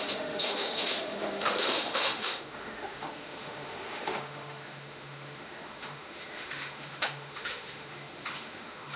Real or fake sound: fake